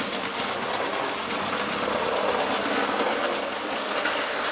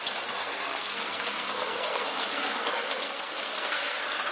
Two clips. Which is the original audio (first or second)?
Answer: first